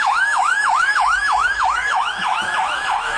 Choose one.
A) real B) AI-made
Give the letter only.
B